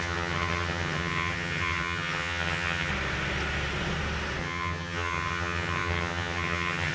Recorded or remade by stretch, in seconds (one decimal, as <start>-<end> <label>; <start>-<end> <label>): 0.0-2.9 remade; 2.9-4.4 recorded; 4.4-6.9 remade